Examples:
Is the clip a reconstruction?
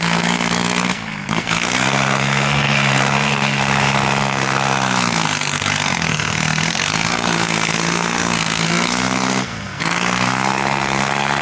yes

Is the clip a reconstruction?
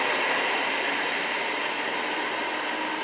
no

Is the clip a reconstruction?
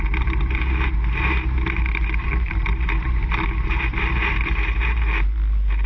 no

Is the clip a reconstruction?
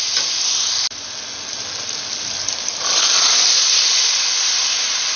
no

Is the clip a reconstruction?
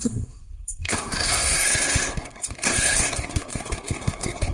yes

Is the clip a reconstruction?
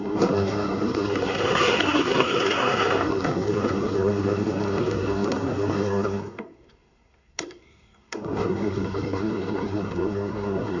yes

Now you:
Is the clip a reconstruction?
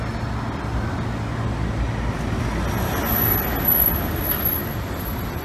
no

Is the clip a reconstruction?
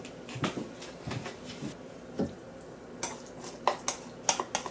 no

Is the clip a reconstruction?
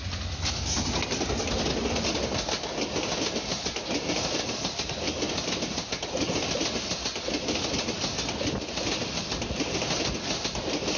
no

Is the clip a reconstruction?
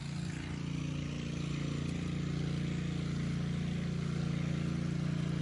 no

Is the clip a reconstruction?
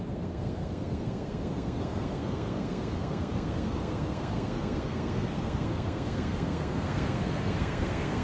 yes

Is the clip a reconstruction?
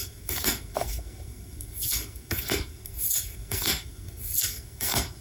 yes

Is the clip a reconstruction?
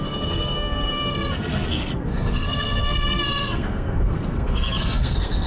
yes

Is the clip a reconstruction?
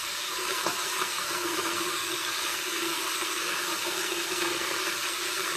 yes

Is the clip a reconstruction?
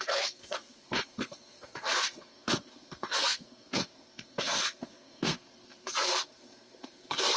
yes